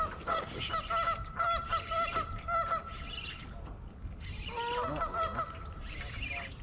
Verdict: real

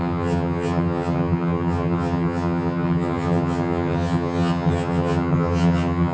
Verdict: fake